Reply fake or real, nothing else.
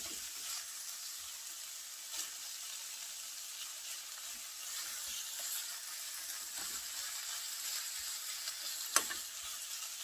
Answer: real